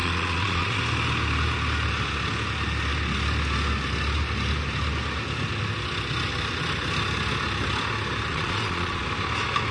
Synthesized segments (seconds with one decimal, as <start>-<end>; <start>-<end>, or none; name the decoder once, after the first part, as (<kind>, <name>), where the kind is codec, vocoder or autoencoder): 0.0-0.8 (vocoder, Vocos); 8.3-9.0